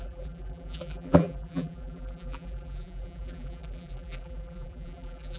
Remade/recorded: remade